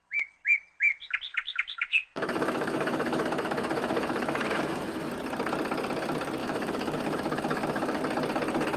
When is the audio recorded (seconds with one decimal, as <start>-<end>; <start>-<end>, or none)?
0.0-1.3; 5.1-6.4; 8.0-8.8